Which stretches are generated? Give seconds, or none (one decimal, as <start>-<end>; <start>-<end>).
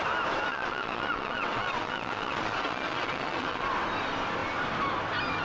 0.5-3.7